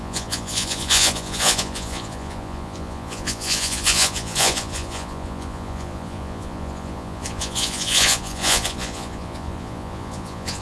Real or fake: fake